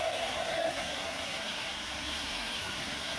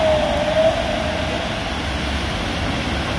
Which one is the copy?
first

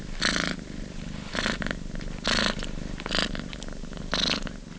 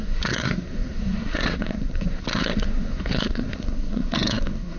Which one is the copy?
second